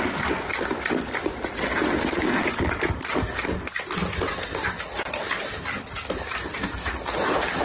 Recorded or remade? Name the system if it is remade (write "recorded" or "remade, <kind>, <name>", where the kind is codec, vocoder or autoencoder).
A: recorded